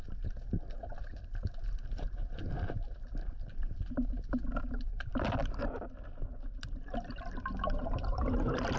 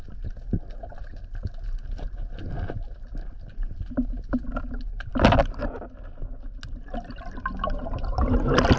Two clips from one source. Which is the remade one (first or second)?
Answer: first